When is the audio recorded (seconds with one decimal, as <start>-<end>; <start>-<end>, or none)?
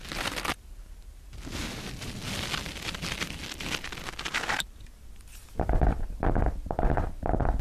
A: 0.0-7.6